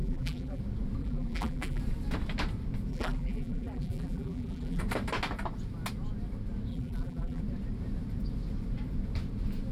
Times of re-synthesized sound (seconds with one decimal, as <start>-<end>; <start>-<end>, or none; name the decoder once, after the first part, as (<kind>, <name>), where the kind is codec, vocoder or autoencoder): 0.0-0.6 (vocoder, BigVGAN v2); 1.0-1.8; 2.9-4.8; 6.7-7.4